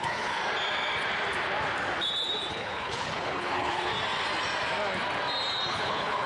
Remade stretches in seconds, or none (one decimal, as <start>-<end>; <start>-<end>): 0.0-0.4; 2.5-3.9; 5.7-6.3